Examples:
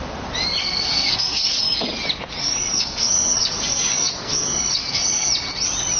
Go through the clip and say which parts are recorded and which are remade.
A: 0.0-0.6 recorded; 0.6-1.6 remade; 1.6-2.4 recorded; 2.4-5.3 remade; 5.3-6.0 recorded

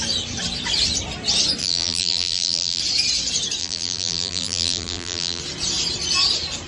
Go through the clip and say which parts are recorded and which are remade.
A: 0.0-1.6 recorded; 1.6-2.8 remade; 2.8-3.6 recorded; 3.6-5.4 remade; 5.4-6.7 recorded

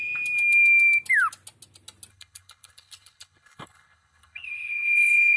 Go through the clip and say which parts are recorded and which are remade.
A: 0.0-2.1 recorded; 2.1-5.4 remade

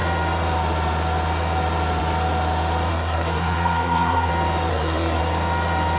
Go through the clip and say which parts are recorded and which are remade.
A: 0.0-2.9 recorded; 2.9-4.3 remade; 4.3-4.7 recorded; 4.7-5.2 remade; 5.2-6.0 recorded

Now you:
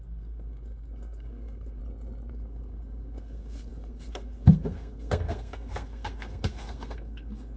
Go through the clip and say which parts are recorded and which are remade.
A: 0.0-1.8 remade; 1.8-2.3 recorded; 2.3-7.6 remade

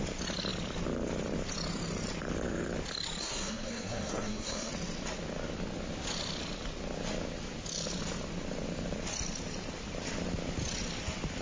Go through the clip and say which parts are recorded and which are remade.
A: 0.0-3.2 recorded; 3.2-4.7 remade; 4.7-11.4 recorded

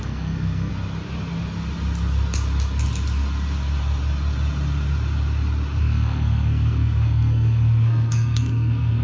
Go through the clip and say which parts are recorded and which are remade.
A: 0.0-0.7 remade; 0.7-5.8 recorded; 5.8-9.0 remade

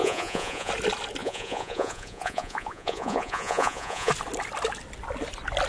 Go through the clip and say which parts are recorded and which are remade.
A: 0.0-0.7 remade; 0.7-1.2 recorded; 1.2-4.1 remade; 4.1-5.7 recorded